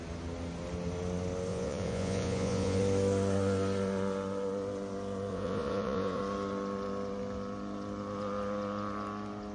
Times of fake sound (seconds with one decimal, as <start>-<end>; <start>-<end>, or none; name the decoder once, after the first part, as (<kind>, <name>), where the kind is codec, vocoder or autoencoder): 1.5-2.8 (vocoder, Vocos); 5.3-6.2